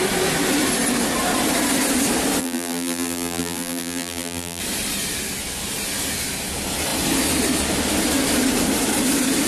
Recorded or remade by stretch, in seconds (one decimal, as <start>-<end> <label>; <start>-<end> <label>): 0.0-2.4 recorded; 2.4-4.6 remade; 4.6-9.5 recorded